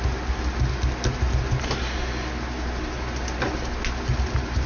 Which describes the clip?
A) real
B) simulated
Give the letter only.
A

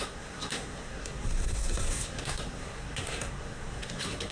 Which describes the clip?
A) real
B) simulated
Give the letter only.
B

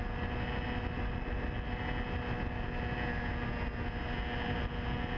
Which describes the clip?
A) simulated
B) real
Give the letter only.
B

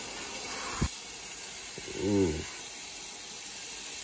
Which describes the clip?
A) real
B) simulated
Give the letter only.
A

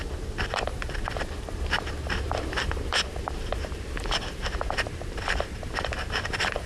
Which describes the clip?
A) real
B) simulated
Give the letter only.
B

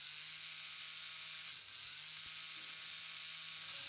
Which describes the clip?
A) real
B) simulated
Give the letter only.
A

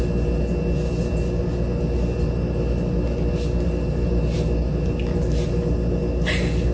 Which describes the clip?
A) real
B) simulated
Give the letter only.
A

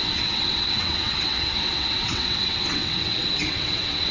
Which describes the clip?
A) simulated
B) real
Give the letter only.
A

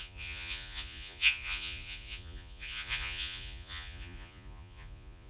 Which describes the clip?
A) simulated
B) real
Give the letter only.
A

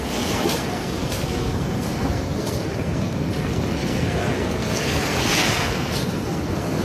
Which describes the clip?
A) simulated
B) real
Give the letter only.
A